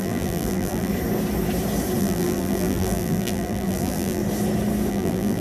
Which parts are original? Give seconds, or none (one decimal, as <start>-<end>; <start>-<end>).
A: 0.9-2.0; 4.2-4.9